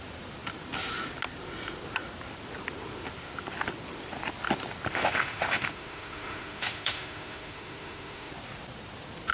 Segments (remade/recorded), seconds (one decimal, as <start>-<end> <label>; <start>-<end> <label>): 0.0-4.9 recorded; 4.9-8.3 remade; 8.3-9.3 recorded